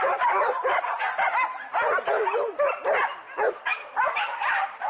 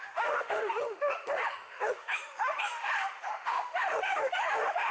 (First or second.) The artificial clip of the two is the second